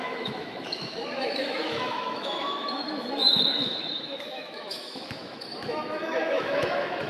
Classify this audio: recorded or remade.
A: remade